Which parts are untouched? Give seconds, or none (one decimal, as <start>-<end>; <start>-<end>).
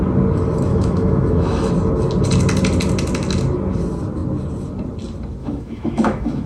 0.0-0.7; 1.7-5.4